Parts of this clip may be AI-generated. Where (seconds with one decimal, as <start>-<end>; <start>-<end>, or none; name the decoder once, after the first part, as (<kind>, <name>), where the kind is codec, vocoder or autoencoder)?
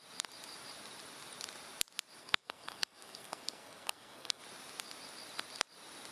2.2-4.4 (codec, SNAC)